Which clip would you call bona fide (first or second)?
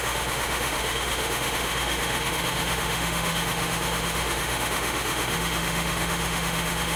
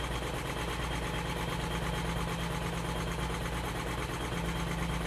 second